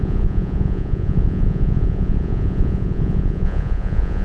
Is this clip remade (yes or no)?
yes